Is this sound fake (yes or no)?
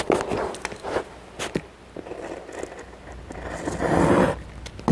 no